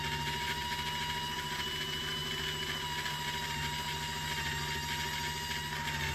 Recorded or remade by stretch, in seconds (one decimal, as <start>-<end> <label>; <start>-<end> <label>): 0.0-6.1 recorded

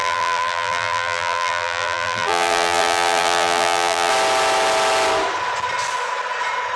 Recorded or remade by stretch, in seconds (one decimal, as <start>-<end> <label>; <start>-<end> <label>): 0.0-4.1 remade; 4.1-6.8 recorded

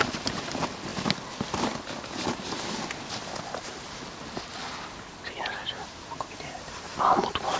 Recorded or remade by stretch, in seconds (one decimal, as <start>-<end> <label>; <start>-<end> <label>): 0.0-5.6 recorded; 5.6-6.5 remade; 6.5-6.9 recorded; 6.9-7.6 remade

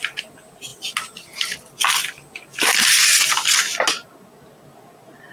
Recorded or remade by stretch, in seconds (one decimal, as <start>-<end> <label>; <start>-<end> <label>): 0.0-5.3 recorded

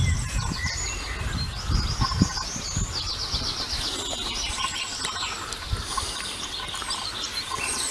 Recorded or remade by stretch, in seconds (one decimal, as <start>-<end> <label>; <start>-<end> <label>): 0.0-6.8 recorded; 6.8-7.9 remade

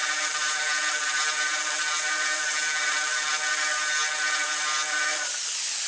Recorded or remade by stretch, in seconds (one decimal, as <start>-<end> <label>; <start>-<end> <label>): 0.0-3.5 remade; 3.5-5.9 recorded

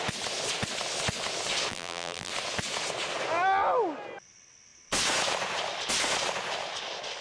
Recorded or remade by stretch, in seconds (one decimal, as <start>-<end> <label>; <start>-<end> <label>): 0.0-1.7 recorded; 1.7-2.3 remade; 2.3-7.2 recorded